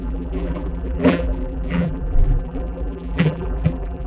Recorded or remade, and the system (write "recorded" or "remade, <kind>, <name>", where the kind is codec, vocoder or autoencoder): remade, vocoder, BigVGAN v2